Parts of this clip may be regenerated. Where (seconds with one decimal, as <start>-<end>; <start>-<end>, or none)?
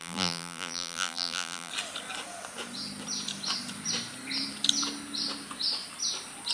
0.0-1.7